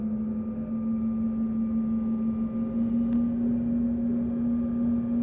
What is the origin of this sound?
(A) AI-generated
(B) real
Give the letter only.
B